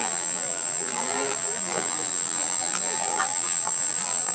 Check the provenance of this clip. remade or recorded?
remade